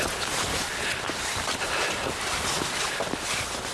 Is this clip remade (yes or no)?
no